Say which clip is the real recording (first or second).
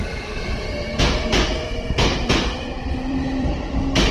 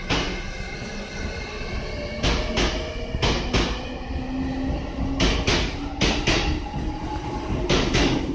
second